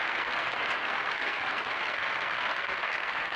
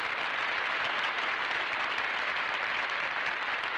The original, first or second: second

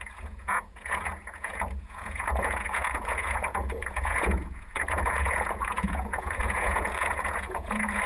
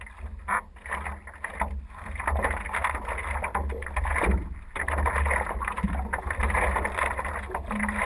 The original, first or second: second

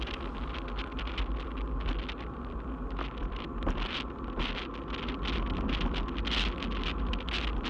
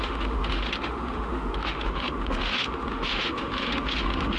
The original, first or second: first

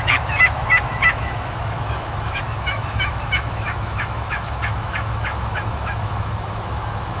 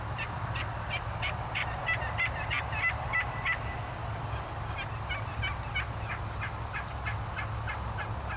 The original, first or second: second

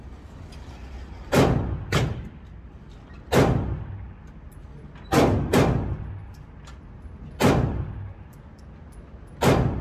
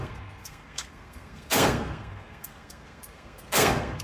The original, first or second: first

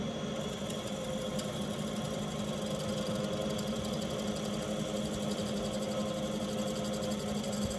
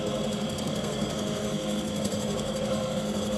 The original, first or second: first